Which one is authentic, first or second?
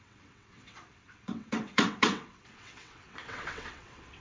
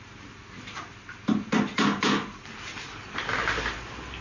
second